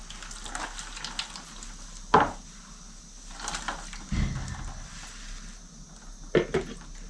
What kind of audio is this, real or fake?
real